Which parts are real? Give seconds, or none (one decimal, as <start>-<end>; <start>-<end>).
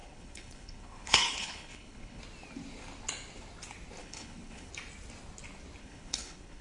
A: 2.2-4.0; 4.7-5.8